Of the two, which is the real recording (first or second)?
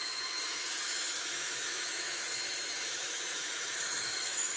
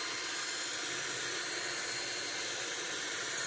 second